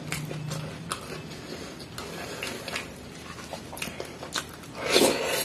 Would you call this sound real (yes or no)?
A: yes